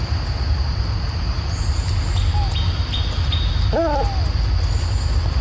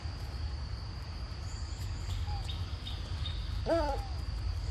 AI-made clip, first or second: second